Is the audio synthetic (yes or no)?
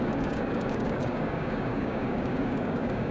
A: yes